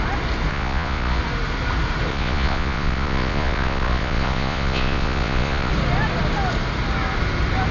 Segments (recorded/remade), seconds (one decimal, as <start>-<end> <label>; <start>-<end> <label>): 0.0-0.5 recorded; 0.5-1.2 remade; 1.2-2.1 recorded; 2.1-5.7 remade; 5.7-7.7 recorded